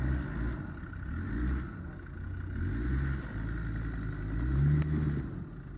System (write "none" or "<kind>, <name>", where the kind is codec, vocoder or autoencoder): none